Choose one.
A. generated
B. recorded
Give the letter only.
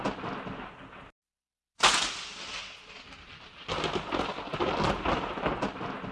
B